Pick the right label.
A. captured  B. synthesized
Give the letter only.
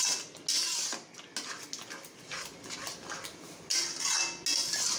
A